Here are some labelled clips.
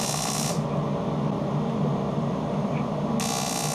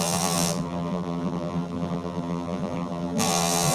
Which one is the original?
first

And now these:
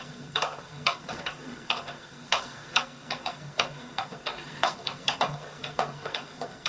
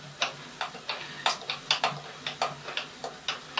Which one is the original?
second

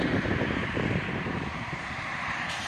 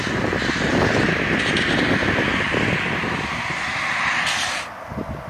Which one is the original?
second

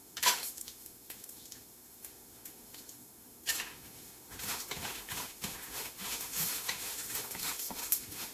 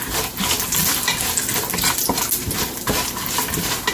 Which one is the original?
second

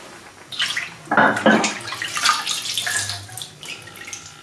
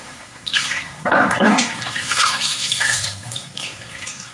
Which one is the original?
first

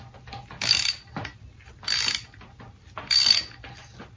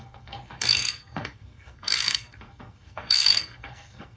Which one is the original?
first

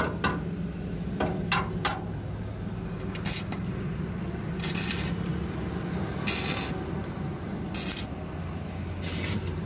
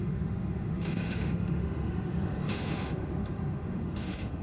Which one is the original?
first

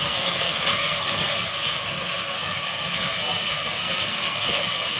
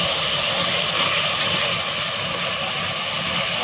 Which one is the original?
second